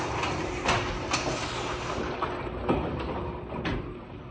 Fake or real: real